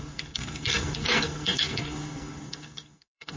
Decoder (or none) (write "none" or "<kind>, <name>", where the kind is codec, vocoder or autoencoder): codec, SNAC